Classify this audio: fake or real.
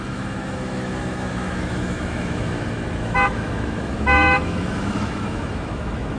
fake